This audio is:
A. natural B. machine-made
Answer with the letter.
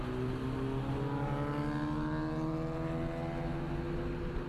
A